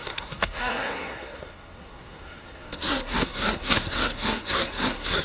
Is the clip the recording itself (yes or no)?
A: no